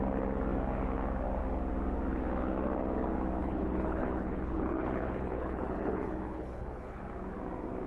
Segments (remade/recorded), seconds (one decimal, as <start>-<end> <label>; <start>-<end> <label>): 0.0-3.4 recorded; 3.4-7.0 remade; 7.0-7.9 recorded